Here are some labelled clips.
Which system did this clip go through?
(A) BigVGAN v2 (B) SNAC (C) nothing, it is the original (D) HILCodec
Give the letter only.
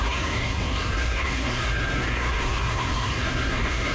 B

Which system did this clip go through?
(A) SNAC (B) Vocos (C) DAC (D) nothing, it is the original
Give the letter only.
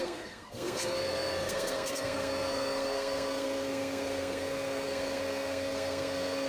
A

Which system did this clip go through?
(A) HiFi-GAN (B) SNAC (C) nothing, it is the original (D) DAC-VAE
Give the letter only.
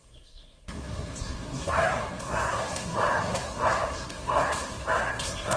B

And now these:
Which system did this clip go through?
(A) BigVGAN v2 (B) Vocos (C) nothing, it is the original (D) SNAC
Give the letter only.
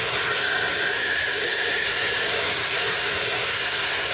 D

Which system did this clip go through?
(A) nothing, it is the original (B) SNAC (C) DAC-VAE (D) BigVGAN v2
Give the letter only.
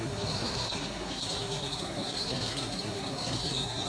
B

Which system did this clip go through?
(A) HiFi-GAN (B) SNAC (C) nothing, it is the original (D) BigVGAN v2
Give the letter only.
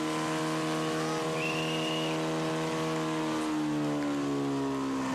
C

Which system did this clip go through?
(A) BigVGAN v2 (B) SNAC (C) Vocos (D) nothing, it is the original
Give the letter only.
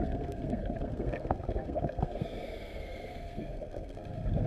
B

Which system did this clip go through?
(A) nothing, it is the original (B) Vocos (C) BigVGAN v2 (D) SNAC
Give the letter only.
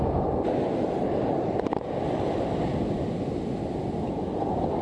A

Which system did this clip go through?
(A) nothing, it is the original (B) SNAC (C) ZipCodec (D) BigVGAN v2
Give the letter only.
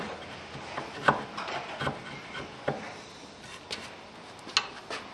A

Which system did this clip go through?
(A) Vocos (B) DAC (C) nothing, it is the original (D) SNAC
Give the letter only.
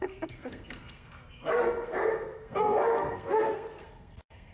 D